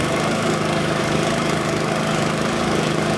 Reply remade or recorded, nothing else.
remade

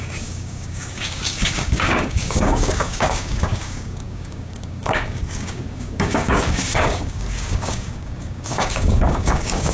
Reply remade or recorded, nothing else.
remade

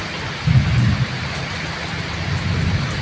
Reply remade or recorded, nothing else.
recorded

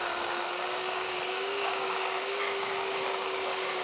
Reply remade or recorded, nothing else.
remade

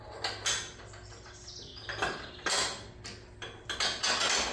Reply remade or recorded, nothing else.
recorded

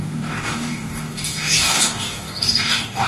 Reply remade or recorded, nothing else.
remade